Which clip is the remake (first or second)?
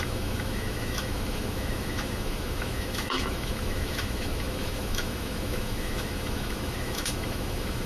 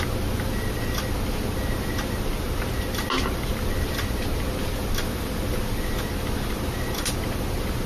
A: first